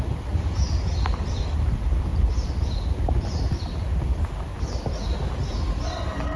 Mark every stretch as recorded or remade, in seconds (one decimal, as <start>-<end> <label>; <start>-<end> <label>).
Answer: 0.0-2.1 recorded; 2.1-3.6 remade; 3.6-6.4 recorded